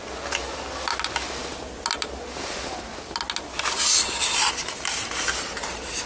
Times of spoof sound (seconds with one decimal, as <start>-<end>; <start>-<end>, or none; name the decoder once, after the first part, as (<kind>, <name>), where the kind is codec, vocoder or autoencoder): none